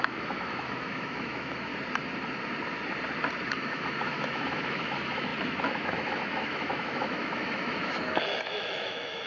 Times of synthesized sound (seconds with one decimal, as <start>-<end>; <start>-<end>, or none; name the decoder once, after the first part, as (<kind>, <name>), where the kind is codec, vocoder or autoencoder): 0.0-1.7 (autoencoder, DAC-VAE); 3.5-9.3